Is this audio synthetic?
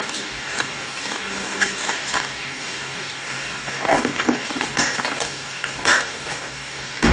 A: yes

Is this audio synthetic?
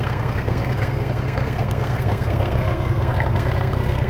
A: yes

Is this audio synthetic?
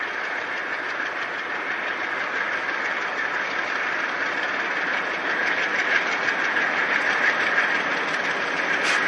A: no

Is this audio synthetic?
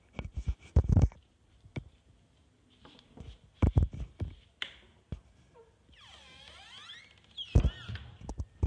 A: no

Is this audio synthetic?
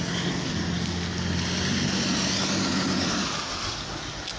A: no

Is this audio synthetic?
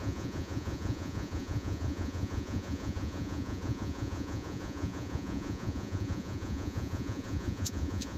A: yes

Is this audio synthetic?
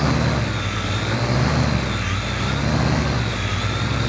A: no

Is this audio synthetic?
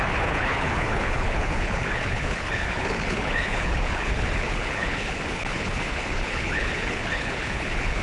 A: yes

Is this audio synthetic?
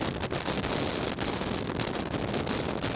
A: no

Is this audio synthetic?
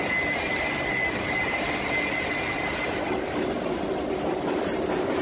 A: no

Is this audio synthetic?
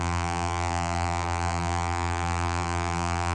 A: yes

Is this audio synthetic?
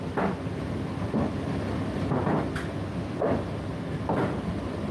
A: yes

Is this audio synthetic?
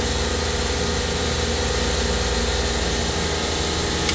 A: no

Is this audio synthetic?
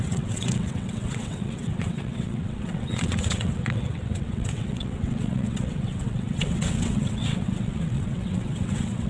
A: yes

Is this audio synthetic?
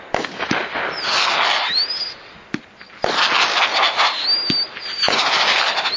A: no